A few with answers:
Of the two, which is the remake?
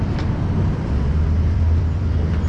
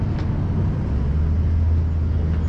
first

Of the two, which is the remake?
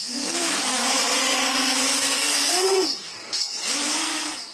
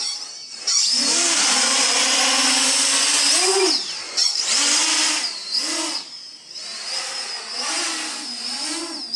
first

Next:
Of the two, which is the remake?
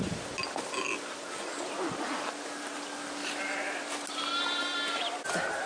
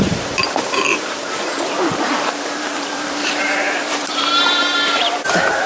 second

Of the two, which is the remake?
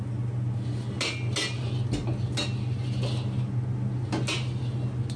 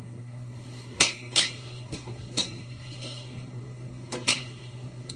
second